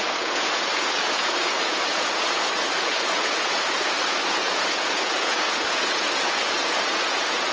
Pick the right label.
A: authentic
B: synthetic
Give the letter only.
B